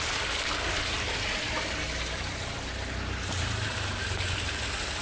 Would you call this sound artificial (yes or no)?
no